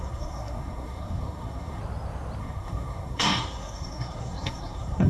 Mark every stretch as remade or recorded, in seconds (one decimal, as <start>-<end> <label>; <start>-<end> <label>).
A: 0.0-1.8 remade; 1.8-2.4 recorded; 2.4-5.1 remade